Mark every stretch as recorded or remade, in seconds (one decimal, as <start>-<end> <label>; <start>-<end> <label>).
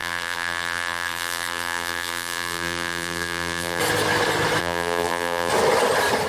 0.0-3.8 remade; 3.8-4.6 recorded; 4.6-5.5 remade; 5.5-6.3 recorded